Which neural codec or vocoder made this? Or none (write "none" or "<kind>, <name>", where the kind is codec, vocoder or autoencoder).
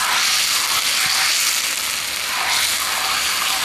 none